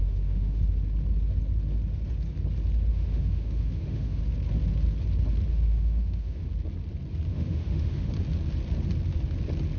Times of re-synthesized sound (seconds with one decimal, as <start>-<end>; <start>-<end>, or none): 0.0-0.6; 2.9-4.2; 5.5-6.4; 7.3-8.1